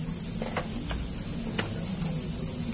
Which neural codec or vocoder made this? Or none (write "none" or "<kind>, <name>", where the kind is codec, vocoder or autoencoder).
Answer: none